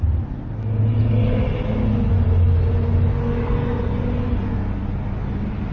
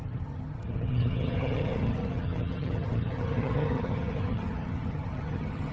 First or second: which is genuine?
first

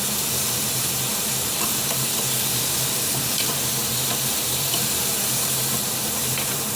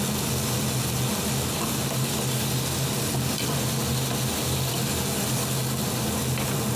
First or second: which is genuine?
second